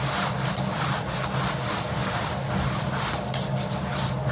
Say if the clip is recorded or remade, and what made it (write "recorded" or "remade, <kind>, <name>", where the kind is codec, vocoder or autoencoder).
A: recorded